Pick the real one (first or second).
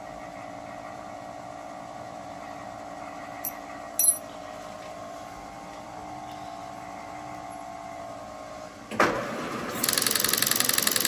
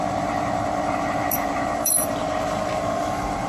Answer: first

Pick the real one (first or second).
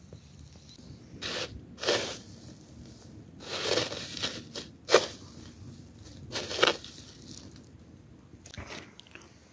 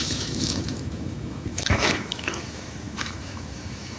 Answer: first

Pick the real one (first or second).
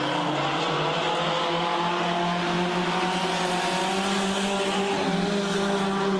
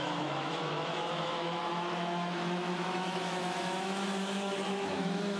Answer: first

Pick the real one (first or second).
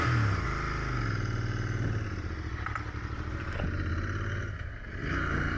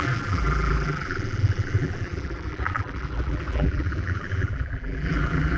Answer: first